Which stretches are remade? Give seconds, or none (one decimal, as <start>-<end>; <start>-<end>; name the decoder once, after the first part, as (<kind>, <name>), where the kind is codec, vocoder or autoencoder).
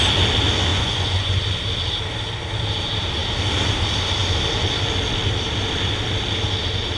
0.7-1.4 (vocoder, Vocos)